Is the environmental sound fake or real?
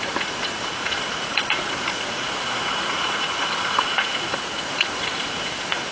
fake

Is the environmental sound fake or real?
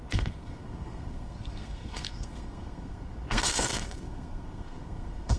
fake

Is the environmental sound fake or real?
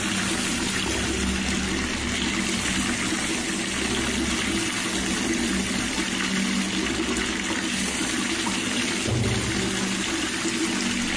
real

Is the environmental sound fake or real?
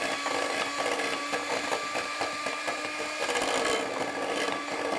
real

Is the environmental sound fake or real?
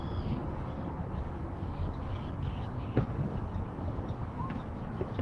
fake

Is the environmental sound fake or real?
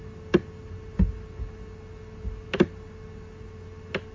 real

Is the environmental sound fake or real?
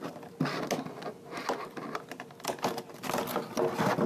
real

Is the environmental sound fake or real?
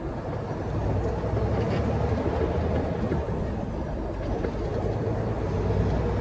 real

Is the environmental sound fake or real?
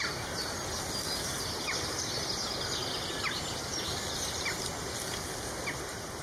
real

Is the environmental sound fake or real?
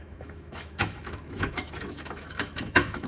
fake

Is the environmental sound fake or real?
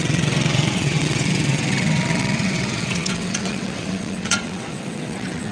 fake